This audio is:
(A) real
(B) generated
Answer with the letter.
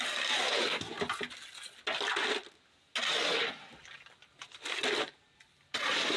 A